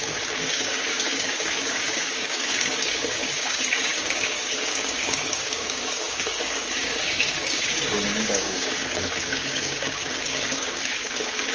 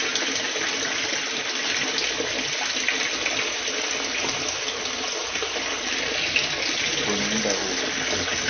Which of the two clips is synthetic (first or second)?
first